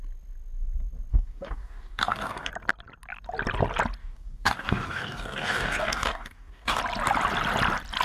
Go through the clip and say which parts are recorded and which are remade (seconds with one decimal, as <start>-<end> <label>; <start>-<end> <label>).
0.0-1.1 recorded; 1.1-2.5 remade; 2.5-4.0 recorded; 4.0-6.8 remade; 6.8-8.0 recorded